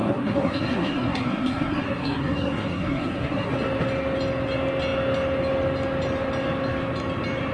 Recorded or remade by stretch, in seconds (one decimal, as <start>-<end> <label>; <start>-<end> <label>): 0.0-3.5 remade; 3.5-7.5 recorded